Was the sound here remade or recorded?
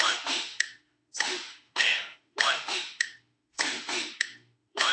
remade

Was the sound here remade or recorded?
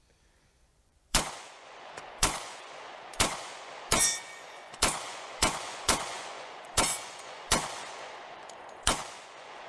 remade